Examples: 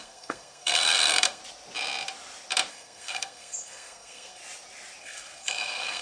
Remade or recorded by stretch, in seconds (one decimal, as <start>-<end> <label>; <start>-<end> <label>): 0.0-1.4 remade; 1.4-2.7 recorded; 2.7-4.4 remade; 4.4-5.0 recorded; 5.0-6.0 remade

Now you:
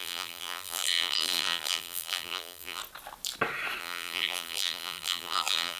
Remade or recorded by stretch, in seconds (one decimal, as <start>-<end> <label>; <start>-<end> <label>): 0.0-2.8 remade; 2.8-3.8 recorded; 3.8-5.8 remade

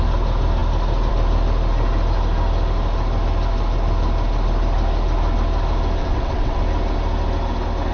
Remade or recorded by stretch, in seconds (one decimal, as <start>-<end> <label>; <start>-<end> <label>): 0.0-6.0 recorded; 6.0-6.6 remade; 6.6-7.9 recorded